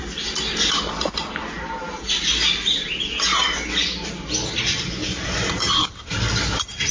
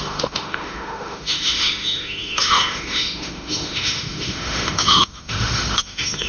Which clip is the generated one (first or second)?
second